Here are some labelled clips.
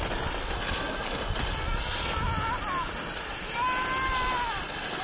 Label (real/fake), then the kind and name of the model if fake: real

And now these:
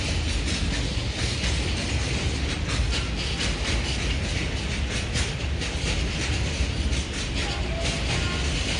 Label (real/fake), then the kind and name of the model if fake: real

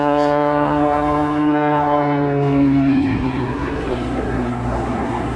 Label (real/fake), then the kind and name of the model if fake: fake, codec, SNAC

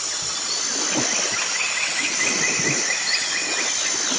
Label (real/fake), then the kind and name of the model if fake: real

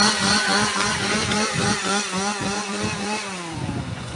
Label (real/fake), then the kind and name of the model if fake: fake, vocoder, Vocos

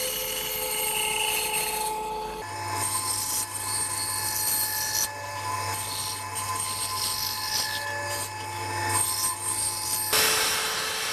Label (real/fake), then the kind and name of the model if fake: real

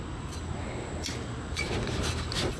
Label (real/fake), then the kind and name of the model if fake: real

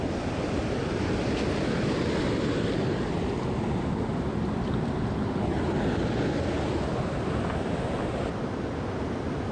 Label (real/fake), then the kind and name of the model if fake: real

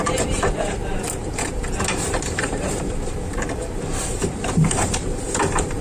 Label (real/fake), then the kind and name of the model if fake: fake, vocoder, BigVGAN v2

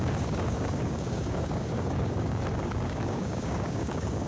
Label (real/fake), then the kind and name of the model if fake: fake, codec, DAC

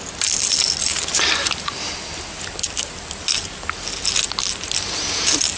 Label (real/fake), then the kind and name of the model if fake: real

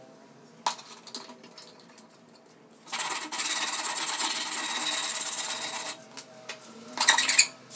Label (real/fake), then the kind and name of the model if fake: real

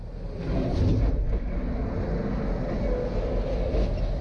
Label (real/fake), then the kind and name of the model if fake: real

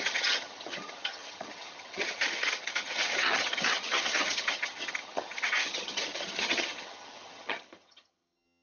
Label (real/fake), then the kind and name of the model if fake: fake, vocoder, HiFi-GAN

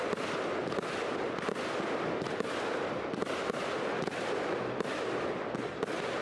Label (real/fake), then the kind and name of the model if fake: real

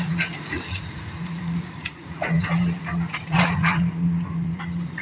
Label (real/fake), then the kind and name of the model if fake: fake, vocoder, Vocos